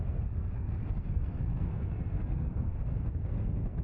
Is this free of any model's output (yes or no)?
no